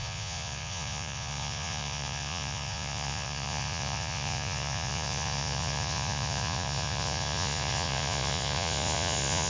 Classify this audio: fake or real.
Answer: fake